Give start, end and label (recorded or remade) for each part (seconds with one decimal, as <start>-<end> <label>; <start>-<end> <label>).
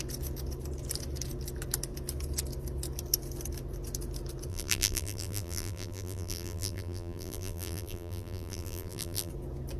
0.0-4.5 recorded; 4.5-9.3 remade; 9.3-9.8 recorded